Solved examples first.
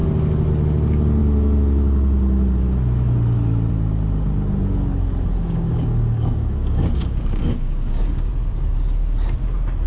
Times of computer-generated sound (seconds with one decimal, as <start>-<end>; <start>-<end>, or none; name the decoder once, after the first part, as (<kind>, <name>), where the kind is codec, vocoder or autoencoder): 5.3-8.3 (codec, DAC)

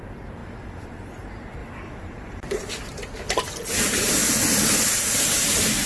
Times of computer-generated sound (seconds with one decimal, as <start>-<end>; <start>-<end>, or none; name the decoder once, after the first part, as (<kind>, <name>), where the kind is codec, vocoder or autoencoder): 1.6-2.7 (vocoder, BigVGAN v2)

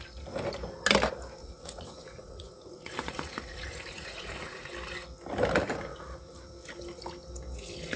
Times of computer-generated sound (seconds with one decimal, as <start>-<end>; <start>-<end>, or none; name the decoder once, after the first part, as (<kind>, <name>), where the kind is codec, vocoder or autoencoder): 1.4-4.7 (vocoder, Vocos)

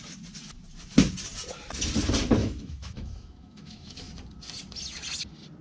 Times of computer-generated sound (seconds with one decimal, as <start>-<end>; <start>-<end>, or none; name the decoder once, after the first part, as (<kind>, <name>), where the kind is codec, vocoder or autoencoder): 2.4-4.0 (autoencoder, DAC-VAE)

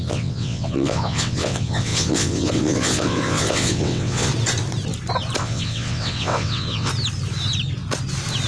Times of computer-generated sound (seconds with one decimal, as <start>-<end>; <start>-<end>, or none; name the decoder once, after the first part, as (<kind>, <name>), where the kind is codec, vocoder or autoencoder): 0.0-4.3 (vocoder, WaveNeXt); 5.4-6.9